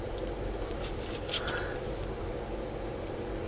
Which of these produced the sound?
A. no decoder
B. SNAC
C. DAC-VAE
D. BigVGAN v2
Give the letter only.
A